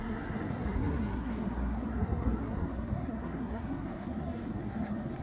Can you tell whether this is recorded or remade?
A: remade